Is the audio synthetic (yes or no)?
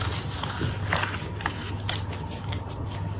no